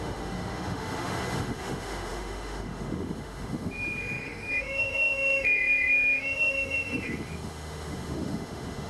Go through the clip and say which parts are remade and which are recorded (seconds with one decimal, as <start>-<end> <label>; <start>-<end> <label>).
0.0-8.9 remade